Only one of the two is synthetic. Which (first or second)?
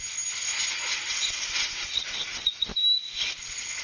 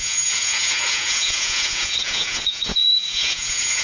second